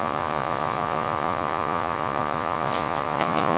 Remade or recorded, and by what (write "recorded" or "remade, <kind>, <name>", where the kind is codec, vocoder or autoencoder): remade, vocoder, Vocos